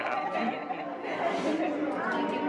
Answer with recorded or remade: recorded